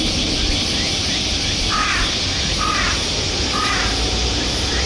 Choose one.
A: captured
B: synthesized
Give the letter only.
A